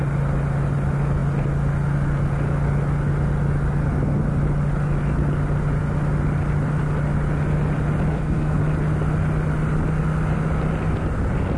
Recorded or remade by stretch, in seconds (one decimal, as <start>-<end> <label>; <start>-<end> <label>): 0.0-8.1 recorded; 8.1-8.6 remade; 8.6-11.6 recorded